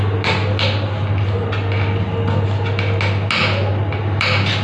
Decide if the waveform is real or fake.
real